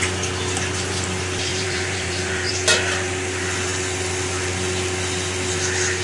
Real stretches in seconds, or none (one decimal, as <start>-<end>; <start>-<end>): 0.0-1.5; 2.5-6.0